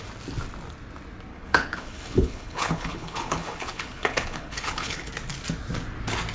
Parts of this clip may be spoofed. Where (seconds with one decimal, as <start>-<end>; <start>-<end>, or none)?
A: 1.3-5.1